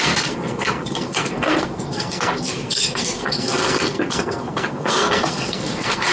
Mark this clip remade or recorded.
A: remade